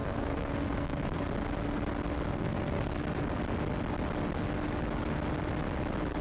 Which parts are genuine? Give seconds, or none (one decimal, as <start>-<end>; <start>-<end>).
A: 1.2-2.3; 3.1-6.2